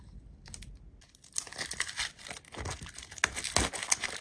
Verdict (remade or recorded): recorded